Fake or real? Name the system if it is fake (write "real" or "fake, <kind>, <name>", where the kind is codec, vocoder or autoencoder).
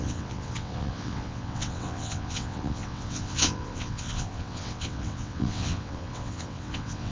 fake, vocoder, WaveNeXt